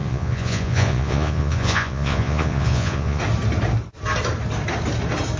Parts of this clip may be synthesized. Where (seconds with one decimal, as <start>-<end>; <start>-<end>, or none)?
0.0-3.2

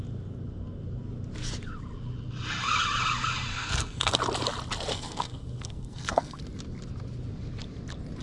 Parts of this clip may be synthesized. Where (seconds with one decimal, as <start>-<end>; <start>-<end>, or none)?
3.5-4.1; 4.9-6.4

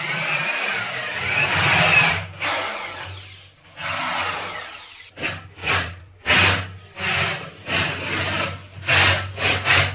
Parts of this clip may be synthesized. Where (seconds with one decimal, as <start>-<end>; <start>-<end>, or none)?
5.6-6.1

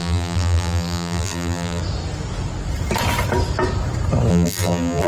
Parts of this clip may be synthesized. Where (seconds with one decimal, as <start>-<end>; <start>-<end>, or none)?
0.0-1.8; 4.3-5.1